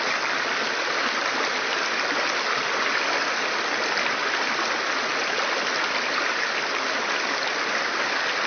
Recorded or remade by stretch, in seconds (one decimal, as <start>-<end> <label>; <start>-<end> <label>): 0.0-8.5 recorded